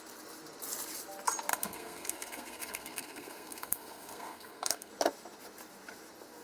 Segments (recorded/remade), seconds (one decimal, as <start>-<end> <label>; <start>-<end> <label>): 0.0-1.5 recorded; 1.5-4.9 remade; 4.9-6.4 recorded